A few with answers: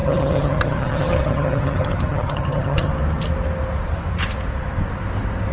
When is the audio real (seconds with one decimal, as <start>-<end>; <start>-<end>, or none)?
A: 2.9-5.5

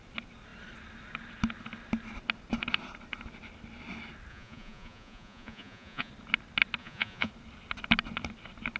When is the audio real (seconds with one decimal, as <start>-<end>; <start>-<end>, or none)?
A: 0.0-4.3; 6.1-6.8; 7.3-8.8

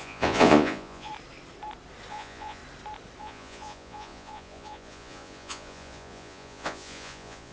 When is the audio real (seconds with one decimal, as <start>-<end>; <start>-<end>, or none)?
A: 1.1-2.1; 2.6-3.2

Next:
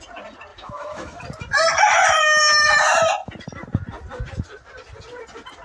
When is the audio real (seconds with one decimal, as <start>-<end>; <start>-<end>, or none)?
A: 0.0-0.5; 1.2-5.6

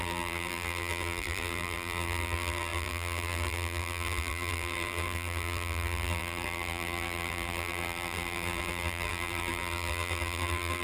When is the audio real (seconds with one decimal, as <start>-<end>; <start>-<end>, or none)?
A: none

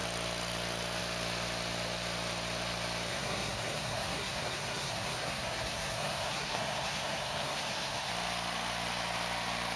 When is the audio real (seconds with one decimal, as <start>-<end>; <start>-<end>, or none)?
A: 0.0-3.1; 8.1-9.8